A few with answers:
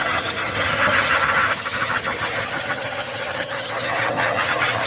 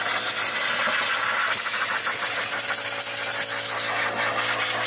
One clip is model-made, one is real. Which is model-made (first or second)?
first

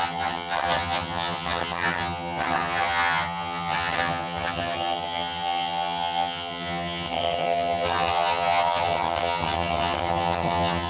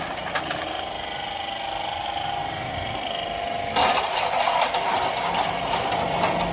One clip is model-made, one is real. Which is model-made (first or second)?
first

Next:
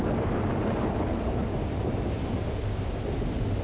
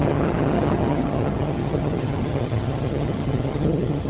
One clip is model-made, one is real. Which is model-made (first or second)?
second